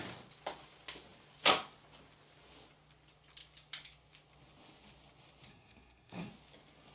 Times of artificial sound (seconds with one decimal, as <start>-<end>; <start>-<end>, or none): 5.5-6.3